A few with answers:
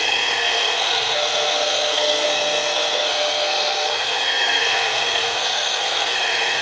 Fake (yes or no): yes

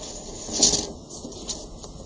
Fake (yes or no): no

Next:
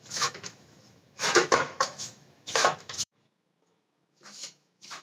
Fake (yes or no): yes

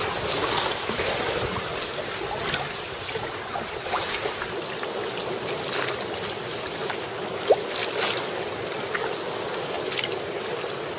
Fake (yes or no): no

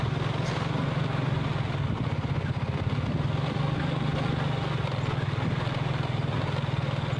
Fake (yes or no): no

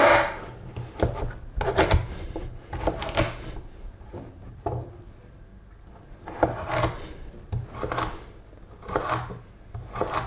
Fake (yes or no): no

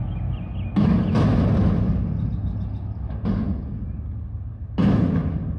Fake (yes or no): no